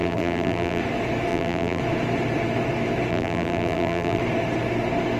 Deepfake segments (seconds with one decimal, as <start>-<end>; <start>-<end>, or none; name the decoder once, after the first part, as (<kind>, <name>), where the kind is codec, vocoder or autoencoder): 0.0-0.8 (vocoder, BigVGAN v2); 1.3-1.8; 3.1-4.2